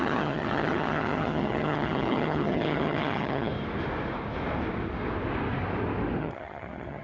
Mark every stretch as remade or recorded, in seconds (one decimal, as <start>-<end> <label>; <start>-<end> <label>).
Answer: 0.0-3.5 remade; 3.5-6.2 recorded; 6.2-7.0 remade